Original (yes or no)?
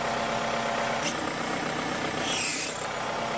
yes